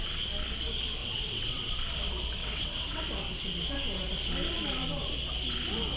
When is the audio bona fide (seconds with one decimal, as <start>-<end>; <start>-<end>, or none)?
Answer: 0.0-1.0; 1.7-2.4; 3.0-6.0